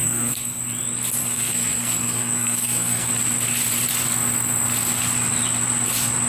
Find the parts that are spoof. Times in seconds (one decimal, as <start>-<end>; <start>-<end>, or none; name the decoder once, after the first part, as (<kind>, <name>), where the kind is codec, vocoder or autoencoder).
0.0-0.6 (codec, SNAC); 1.2-3.1